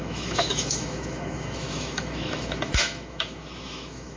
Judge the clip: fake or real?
fake